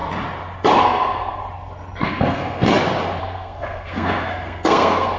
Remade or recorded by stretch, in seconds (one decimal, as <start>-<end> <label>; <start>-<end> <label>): 0.0-0.8 recorded; 0.8-1.4 remade; 1.4-2.0 recorded; 2.0-2.7 remade; 2.7-3.2 recorded; 3.2-5.2 remade